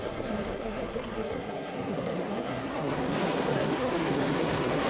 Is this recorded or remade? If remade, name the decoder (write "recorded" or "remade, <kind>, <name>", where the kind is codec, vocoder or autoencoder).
remade, codec, SNAC